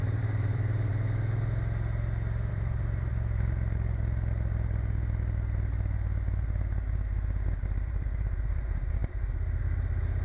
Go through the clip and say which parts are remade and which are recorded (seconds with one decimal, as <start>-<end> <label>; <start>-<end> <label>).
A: 0.0-0.9 remade; 0.9-2.5 recorded; 2.5-3.1 remade; 3.1-7.5 recorded; 7.5-10.2 remade